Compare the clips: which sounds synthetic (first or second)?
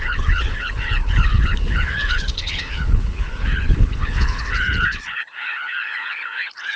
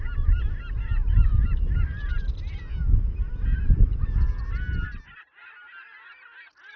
first